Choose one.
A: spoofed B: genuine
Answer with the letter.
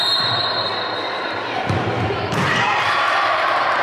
A